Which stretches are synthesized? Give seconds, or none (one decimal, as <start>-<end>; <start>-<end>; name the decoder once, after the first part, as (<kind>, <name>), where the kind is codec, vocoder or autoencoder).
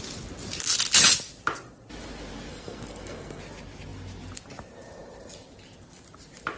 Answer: 2.5-3.4 (codec, SNAC)